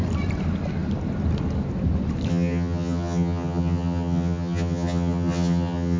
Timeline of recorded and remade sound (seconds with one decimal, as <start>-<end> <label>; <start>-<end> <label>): 0.0-2.3 recorded; 2.3-6.0 remade